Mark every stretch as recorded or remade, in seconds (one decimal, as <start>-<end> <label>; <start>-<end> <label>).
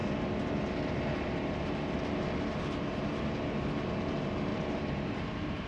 0.0-4.5 recorded; 4.5-5.7 remade